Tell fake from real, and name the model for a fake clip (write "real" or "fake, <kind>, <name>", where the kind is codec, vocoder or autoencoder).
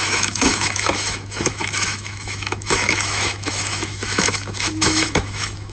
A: fake, autoencoder, DAC-VAE